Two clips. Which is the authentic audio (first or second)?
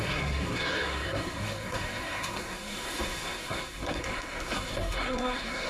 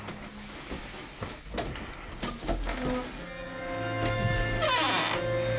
second